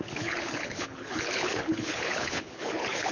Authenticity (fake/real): fake